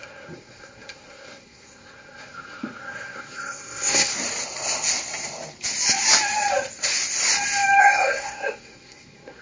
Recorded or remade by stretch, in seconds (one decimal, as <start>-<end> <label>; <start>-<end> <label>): 0.0-4.1 remade; 4.1-7.8 recorded; 7.8-9.4 remade